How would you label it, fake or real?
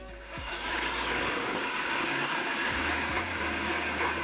fake